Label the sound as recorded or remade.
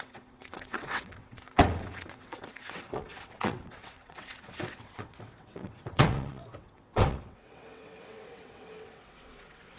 remade